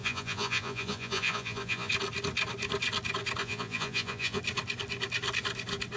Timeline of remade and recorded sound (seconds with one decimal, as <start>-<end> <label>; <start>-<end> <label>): 0.0-1.9 remade; 1.9-3.4 recorded; 3.4-4.4 remade; 4.4-6.0 recorded